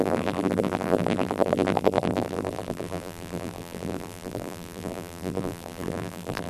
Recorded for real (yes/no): no